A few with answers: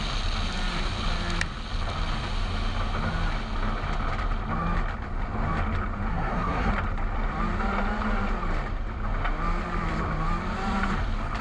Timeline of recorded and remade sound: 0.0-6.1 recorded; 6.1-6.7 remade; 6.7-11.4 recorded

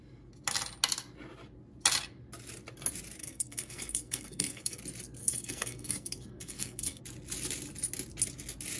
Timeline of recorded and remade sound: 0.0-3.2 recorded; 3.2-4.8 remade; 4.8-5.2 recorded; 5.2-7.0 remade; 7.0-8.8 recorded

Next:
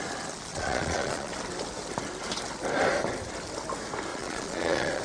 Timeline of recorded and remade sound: 0.0-0.5 recorded; 0.5-1.3 remade; 1.3-4.1 recorded; 4.1-5.0 remade